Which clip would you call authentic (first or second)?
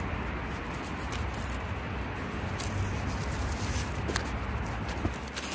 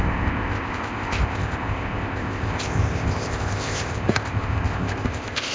first